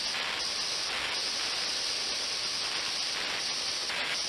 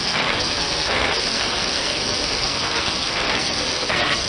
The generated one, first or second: second